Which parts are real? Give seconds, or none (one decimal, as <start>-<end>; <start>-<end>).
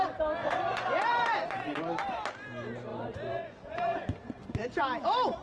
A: 0.0-0.4; 1.8-2.9; 4.8-5.4